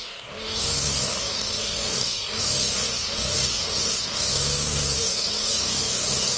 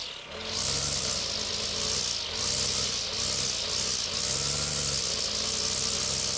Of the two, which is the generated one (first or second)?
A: first